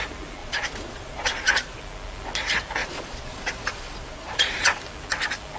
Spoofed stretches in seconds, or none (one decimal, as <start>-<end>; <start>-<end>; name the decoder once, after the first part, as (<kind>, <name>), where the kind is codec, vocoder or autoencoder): 0.4-1.8 (vocoder, Vocos); 2.8-4.8